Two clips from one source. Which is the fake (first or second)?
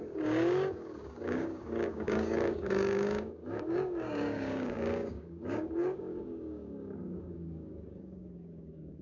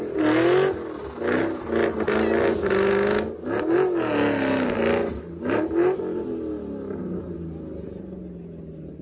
first